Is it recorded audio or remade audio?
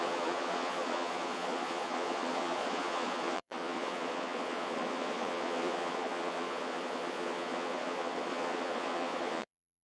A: remade